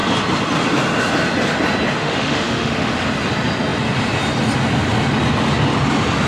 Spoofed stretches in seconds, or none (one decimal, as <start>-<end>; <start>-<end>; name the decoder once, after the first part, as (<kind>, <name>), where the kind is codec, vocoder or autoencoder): 2.0-2.9 (autoencoder, DAC-VAE)